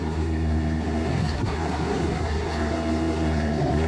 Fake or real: fake